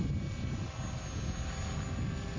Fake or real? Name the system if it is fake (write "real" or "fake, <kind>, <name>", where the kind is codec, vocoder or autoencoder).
real